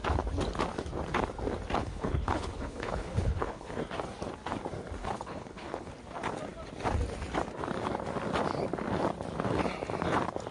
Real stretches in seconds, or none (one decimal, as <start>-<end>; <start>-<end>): 0.0-1.8; 3.8-5.0; 5.9-10.5